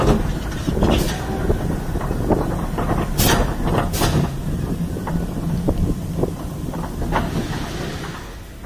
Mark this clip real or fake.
real